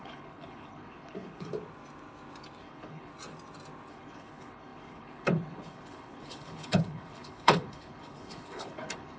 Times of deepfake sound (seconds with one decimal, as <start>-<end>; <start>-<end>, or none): 0.0-1.5; 2.6-3.1; 3.9-9.2